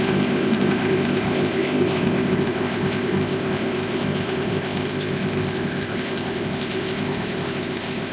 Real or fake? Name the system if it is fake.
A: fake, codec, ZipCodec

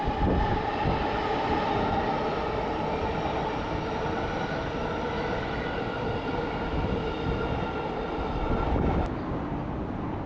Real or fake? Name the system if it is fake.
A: real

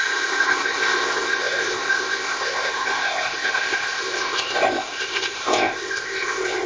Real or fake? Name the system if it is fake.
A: fake, codec, ZipCodec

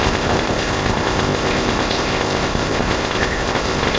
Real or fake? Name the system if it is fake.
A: fake, codec, ZipCodec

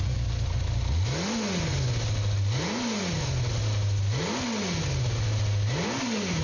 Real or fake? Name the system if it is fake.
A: real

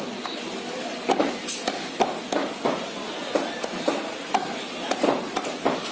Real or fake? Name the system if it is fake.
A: real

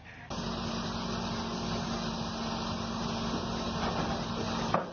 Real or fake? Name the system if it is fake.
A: real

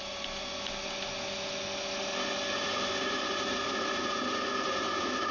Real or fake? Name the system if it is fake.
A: real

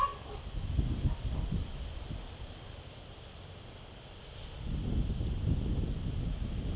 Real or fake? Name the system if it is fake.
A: real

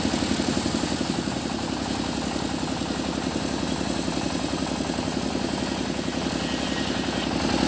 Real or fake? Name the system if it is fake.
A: real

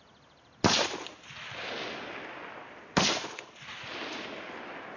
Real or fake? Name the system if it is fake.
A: real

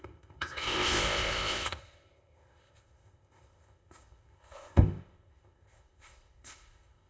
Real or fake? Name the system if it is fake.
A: fake, codec, ZipCodec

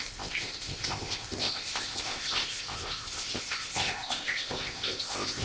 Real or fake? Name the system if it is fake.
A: fake, codec, ZipCodec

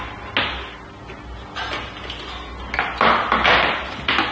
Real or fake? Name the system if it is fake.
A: real